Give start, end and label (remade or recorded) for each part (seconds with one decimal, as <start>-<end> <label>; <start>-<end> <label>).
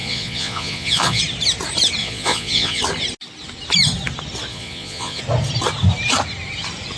0.0-1.2 remade; 1.2-2.0 recorded; 2.0-2.8 remade; 2.8-4.5 recorded; 4.5-5.2 remade; 5.2-7.0 recorded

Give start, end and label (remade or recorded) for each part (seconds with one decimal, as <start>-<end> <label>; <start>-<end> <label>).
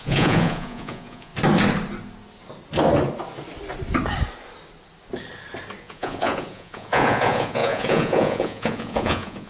0.0-1.3 remade; 1.3-5.8 recorded; 5.8-9.5 remade